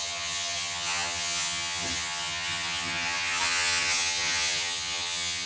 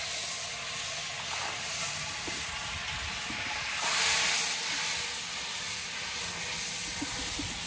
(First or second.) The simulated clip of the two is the first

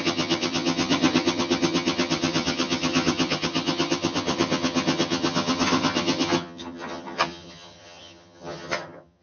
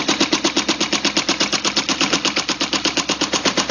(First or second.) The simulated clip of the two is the first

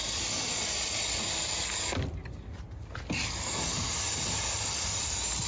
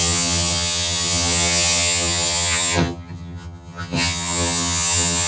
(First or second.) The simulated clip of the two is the second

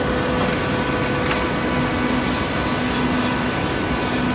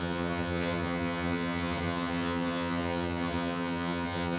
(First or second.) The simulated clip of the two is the second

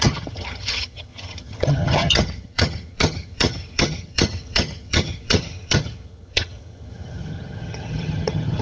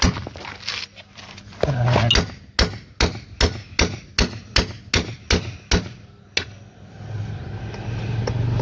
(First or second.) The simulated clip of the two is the first